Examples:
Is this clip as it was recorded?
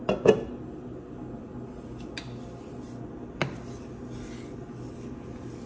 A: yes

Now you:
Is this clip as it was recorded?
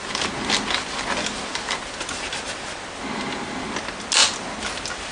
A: yes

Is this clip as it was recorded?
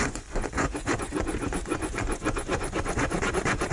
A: no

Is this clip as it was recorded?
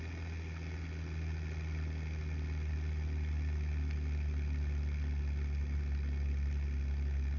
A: yes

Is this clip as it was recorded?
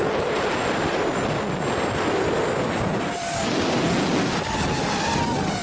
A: yes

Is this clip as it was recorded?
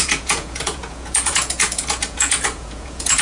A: no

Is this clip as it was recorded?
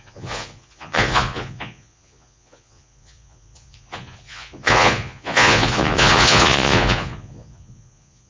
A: no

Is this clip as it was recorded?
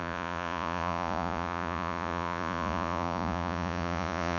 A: no